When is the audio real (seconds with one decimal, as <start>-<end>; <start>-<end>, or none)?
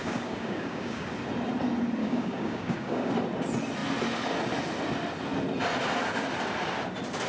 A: 1.1-2.0; 3.1-7.3